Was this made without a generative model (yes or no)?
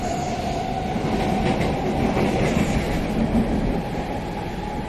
yes